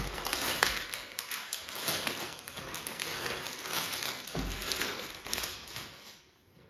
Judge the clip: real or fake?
fake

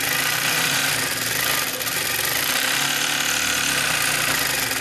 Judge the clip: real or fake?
real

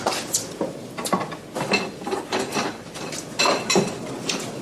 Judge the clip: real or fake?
real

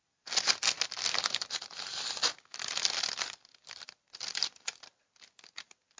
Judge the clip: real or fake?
real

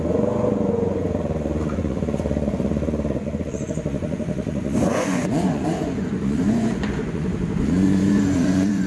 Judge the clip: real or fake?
fake